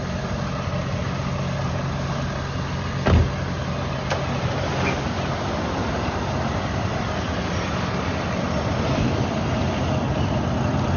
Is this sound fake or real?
real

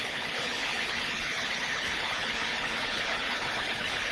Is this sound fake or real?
fake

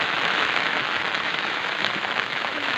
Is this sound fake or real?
fake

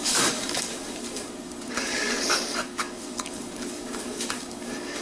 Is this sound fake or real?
fake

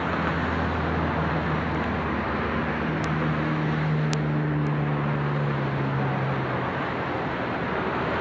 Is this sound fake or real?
real